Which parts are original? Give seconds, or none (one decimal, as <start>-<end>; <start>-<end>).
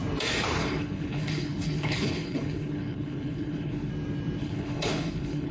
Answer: 0.0-0.6; 3.9-4.4